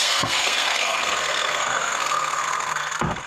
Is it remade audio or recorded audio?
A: remade